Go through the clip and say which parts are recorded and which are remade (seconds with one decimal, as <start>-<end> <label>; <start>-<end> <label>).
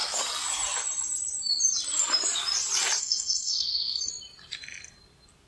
0.0-3.0 recorded; 3.0-4.1 remade; 4.1-5.5 recorded